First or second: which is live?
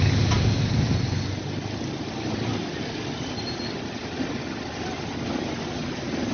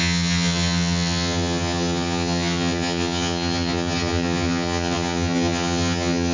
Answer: first